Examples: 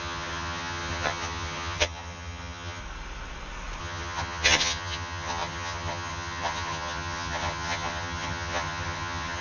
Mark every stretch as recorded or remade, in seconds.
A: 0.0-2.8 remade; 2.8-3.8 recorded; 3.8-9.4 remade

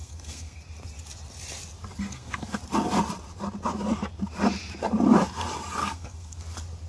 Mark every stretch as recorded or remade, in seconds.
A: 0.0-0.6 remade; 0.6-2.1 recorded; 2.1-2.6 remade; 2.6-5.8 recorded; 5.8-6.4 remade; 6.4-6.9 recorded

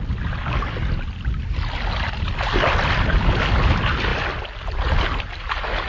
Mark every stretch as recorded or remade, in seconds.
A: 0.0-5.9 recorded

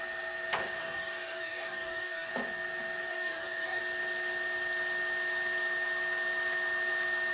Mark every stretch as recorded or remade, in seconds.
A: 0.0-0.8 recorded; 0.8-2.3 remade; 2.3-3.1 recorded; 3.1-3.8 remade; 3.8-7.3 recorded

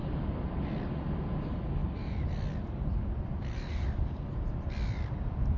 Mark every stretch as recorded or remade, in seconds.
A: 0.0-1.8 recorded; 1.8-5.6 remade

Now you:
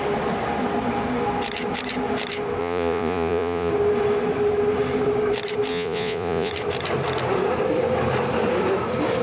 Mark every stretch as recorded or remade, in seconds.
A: 0.0-2.6 recorded; 2.6-3.7 remade; 3.7-5.7 recorded; 5.7-6.5 remade; 6.5-9.2 recorded

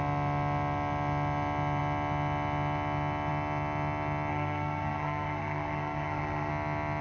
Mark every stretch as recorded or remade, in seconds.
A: 0.0-4.3 recorded; 4.3-6.5 remade; 6.5-7.0 recorded

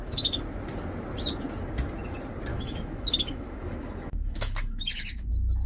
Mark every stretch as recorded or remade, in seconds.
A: 0.0-2.5 recorded; 2.5-5.3 remade; 5.3-5.7 recorded